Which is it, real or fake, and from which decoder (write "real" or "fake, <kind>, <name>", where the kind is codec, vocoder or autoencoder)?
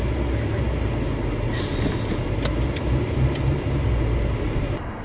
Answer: real